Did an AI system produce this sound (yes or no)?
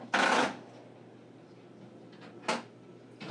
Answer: no